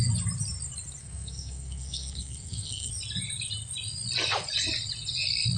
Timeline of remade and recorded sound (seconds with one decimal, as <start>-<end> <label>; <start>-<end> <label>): 0.0-1.0 recorded; 1.0-2.9 remade; 2.9-5.6 recorded